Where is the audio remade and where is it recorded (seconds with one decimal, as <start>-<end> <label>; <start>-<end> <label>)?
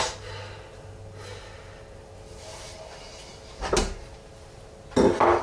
0.0-5.4 recorded